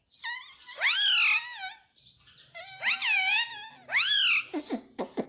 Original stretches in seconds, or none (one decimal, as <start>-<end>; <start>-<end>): 0.0-5.3